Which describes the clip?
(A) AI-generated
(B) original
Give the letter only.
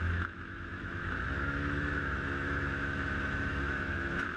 A